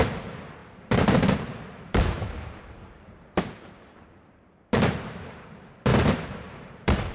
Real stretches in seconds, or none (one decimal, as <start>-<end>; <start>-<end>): none